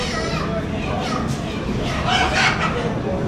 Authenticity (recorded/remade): recorded